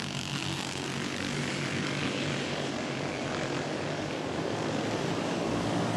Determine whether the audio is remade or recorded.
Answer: remade